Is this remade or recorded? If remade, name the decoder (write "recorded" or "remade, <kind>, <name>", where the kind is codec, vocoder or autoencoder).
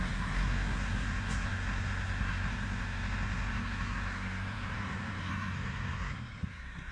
remade, codec, SNAC